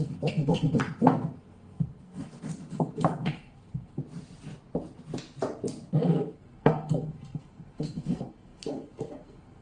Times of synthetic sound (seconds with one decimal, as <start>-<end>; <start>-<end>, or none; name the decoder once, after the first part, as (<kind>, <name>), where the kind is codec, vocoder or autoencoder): 0.0-4.0 (codec, SNAC); 5.9-9.6